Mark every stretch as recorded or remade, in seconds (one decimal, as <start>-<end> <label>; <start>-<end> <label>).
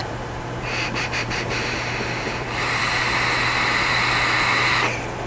0.0-2.8 remade; 2.8-5.3 recorded